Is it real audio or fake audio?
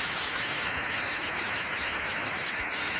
fake